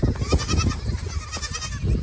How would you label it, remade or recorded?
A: recorded